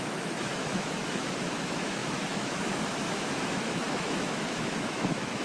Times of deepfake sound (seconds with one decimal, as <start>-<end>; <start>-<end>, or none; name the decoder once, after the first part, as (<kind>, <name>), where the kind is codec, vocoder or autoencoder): 0.0-5.4 (autoencoder, DAC-VAE)